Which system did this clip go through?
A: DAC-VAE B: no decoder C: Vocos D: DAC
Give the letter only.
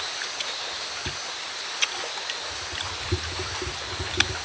B